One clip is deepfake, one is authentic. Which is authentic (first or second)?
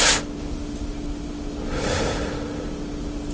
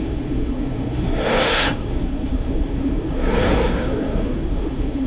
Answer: first